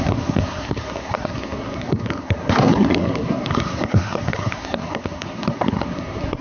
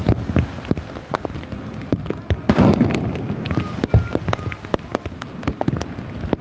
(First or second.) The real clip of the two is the second